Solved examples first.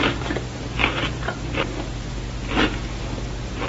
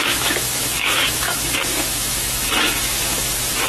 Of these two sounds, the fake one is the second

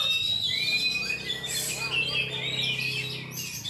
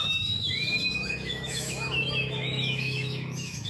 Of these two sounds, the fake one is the second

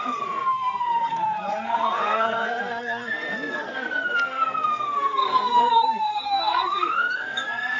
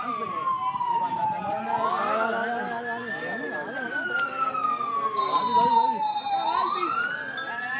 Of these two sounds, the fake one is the first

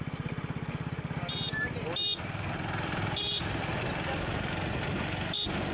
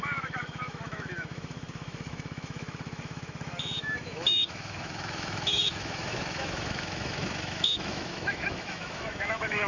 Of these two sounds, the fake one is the second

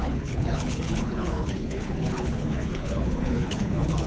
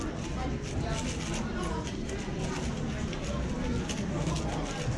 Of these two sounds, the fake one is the first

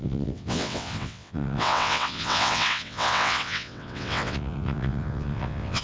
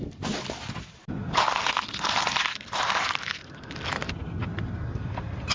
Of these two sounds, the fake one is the first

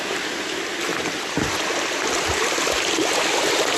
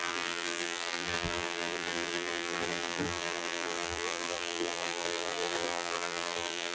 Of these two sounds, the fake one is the second